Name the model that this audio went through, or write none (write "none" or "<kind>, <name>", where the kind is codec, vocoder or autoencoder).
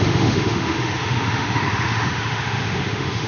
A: autoencoder, DAC-VAE